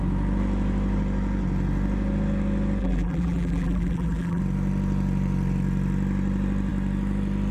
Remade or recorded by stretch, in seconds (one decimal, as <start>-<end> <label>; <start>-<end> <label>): 0.0-2.8 recorded; 2.8-4.4 remade; 4.4-7.5 recorded